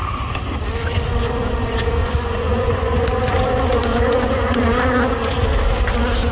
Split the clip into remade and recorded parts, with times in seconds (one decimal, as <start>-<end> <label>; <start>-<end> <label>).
0.0-2.0 recorded; 2.0-3.0 remade; 3.0-3.9 recorded; 3.9-4.6 remade; 4.6-6.3 recorded